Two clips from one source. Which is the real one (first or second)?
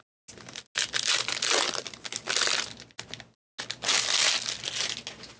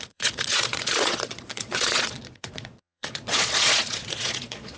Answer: first